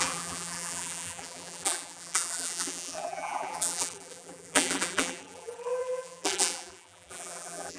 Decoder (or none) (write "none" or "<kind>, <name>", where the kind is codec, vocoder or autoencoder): vocoder, BigVGAN v2